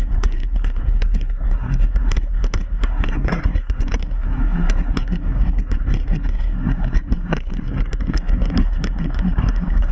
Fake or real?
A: fake